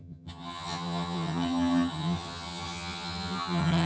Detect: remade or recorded remade